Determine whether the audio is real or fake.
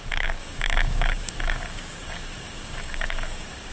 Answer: fake